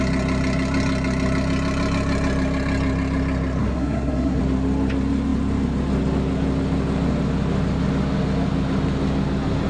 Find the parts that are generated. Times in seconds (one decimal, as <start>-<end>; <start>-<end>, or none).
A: 3.6-4.4